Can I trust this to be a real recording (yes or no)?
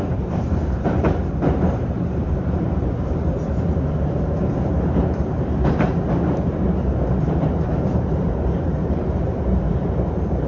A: no